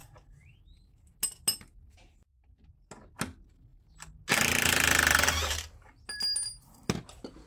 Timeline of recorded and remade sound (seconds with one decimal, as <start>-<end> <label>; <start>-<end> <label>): 0.0-7.5 recorded